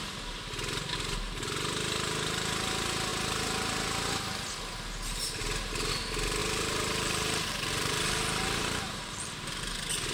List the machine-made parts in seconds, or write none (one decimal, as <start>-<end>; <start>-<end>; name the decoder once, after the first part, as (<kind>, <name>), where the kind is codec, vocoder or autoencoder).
6.4-9.6 (vocoder, BigVGAN v2)